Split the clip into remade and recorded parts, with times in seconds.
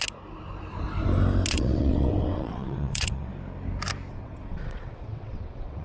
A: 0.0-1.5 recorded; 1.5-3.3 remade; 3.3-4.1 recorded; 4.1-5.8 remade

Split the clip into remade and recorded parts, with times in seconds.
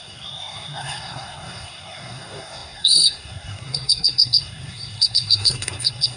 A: 0.0-6.2 remade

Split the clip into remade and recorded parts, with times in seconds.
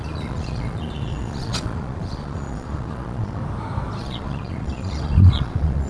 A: 0.0-3.4 remade; 3.4-4.0 recorded; 4.0-5.9 remade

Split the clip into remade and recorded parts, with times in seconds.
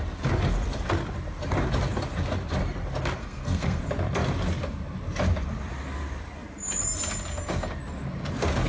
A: 0.0-3.2 recorded; 3.2-3.8 remade; 3.8-8.7 recorded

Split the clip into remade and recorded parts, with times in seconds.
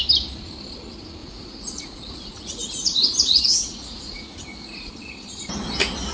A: 0.0-1.2 recorded; 1.2-4.9 remade; 4.9-6.1 recorded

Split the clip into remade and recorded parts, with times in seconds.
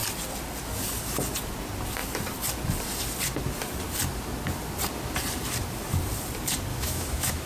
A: 0.0-6.7 recorded; 6.7-7.5 remade